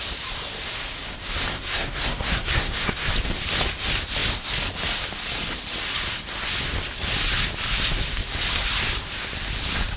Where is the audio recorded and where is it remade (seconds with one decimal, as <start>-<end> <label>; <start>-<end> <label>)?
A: 0.0-1.5 recorded; 1.5-3.1 remade; 3.1-10.0 recorded